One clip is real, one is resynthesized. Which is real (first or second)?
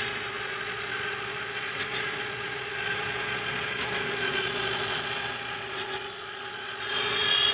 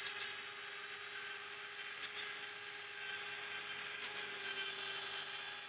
second